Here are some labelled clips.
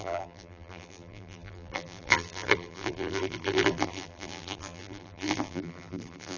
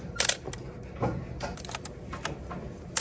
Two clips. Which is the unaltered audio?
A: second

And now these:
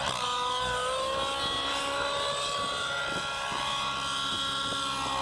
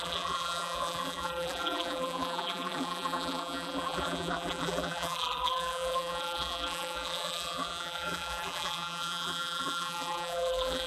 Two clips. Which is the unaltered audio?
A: first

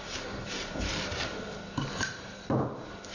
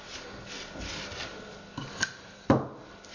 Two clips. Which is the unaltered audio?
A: second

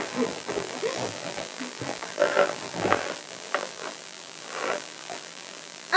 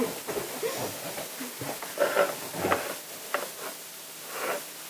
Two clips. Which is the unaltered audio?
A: second